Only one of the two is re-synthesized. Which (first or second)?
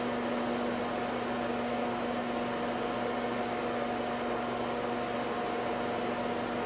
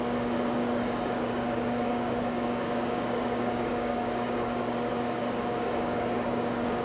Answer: second